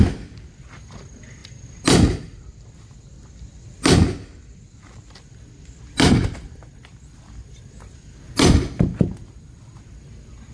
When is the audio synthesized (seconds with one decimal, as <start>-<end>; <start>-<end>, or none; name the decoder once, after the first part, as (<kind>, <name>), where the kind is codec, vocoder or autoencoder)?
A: none